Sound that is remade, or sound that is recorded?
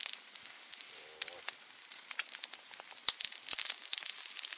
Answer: recorded